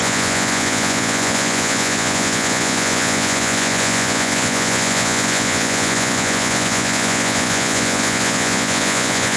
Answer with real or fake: fake